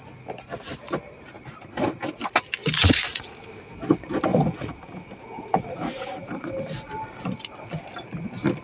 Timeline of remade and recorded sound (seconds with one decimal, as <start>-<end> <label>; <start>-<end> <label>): 0.0-2.6 recorded; 2.6-3.4 remade; 3.4-4.3 recorded; 4.3-6.5 remade; 6.5-8.6 recorded